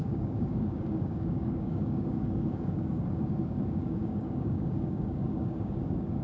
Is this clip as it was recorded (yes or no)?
no